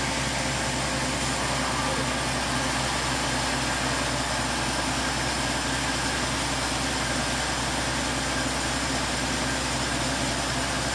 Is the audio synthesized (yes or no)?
no